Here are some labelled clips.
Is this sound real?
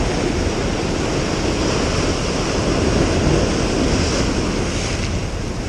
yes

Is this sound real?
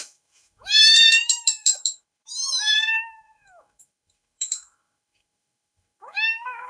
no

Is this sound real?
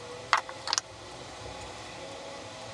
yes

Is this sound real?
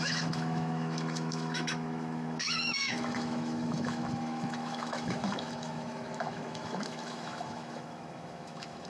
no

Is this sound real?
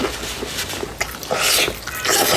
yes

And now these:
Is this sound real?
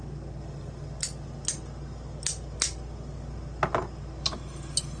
yes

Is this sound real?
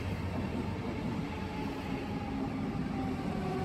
yes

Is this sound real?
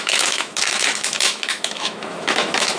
no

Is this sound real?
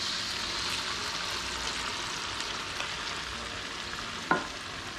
yes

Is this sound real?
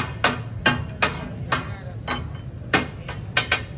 yes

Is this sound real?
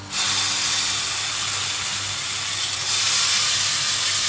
yes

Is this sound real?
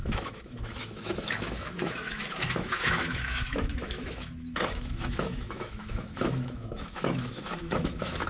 no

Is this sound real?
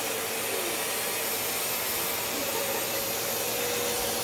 yes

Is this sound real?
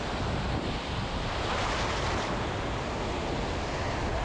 yes